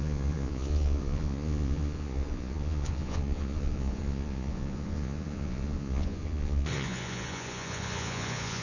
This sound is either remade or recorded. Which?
remade